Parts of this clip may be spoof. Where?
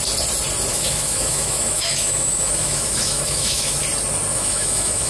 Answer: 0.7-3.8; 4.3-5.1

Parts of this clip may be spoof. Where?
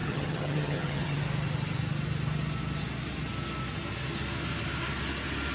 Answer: 0.0-1.2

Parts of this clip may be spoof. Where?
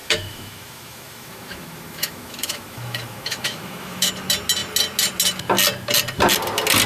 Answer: 0.0-4.1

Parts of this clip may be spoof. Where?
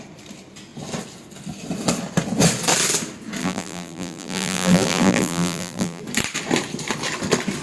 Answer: 3.4-6.0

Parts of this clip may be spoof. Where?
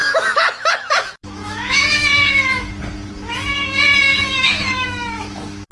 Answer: 0.0-2.7; 4.1-5.7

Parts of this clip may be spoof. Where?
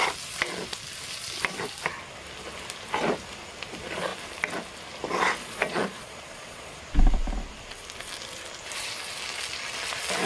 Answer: 5.4-6.8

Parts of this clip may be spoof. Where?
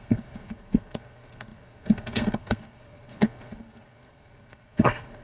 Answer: 0.0-5.2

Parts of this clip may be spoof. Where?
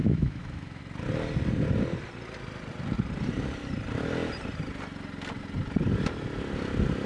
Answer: 0.0-0.8